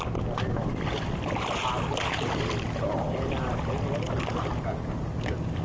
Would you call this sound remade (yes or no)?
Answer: no